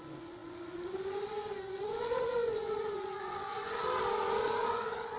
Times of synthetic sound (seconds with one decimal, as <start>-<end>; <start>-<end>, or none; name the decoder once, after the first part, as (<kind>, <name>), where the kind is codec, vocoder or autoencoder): 0.0-3.8 (vocoder, Vocos); 4.6-5.2